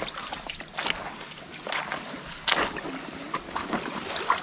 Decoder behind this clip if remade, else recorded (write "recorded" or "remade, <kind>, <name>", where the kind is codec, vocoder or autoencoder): recorded